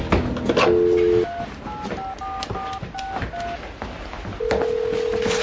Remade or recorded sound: recorded